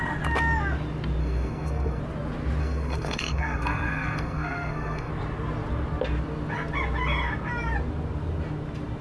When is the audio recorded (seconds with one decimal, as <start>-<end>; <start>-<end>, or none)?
0.0-1.2; 2.0-2.6; 5.1-9.0